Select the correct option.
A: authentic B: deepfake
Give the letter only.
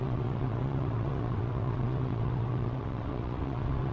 B